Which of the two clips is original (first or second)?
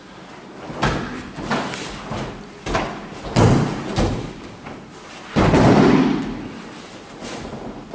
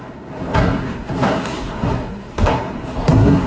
first